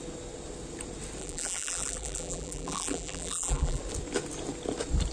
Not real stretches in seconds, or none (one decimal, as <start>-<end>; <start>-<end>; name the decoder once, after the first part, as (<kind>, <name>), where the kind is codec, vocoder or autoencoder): 1.2-3.8 (vocoder, BigVGAN v2)